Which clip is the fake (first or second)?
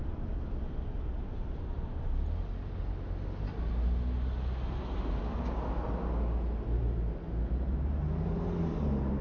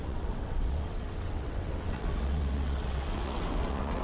second